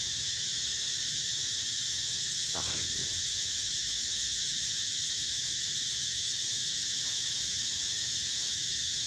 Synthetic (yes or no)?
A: yes